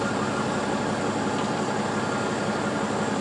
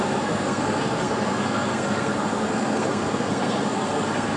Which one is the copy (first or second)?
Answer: second